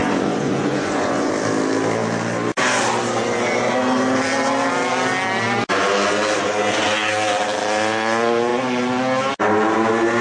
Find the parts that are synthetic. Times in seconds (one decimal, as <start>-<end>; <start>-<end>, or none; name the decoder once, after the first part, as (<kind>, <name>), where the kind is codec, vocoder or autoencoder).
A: 0.0-1.3 (vocoder, Vocos)